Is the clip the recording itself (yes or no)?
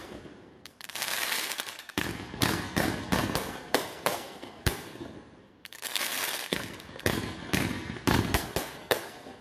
no